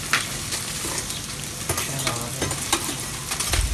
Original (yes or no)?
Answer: yes